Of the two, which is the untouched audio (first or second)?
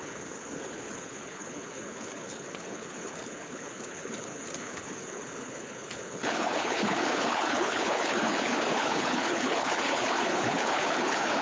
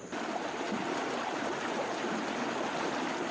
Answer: second